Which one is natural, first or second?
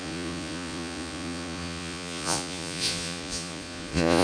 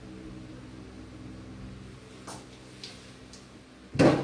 second